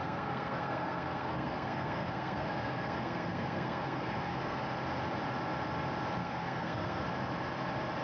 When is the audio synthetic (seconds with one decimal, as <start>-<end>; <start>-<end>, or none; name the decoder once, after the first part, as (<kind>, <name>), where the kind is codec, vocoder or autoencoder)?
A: 0.0-4.6 (codec, SNAC); 6.2-7.0